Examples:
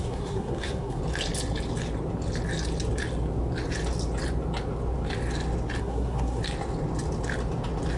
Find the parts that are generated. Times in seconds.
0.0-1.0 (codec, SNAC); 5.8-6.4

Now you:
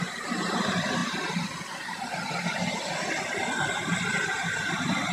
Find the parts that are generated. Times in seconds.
none

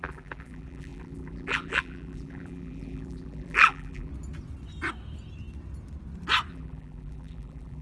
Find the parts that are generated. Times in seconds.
0.0-4.1 (vocoder, BigVGAN v2); 6.5-7.8

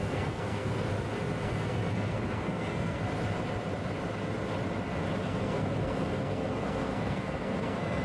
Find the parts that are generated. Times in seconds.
0.0-0.9 (codec, SNAC); 1.4-3.0; 5.2-8.0

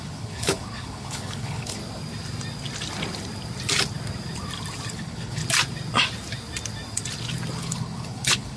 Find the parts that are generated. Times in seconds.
0.0-1.8 (codec, HILCodec); 4.9-5.4; 7.6-8.6

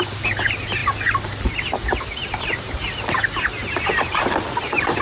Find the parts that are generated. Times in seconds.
none

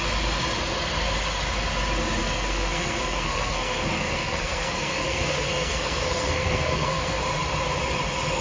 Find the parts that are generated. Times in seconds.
2.2-7.2 (codec, SNAC)

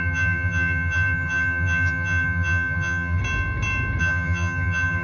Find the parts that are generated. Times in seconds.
0.0-3.2 (vocoder, HiFi-GAN); 4.0-5.0